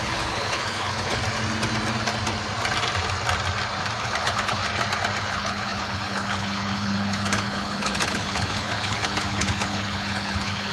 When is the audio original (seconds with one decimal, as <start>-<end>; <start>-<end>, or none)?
1.2-4.0; 4.6-5.2